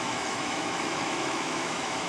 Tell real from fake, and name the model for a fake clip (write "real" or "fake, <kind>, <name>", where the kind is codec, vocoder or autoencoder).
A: fake, autoencoder, DAC-VAE